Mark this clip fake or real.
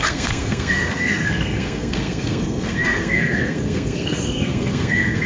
fake